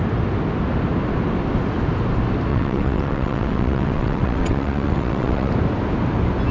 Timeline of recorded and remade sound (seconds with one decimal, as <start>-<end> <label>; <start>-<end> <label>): 0.0-2.5 recorded; 2.5-5.5 remade; 5.5-6.5 recorded

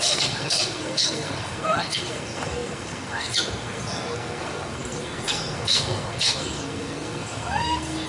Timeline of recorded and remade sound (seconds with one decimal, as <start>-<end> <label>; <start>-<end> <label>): 0.0-8.1 remade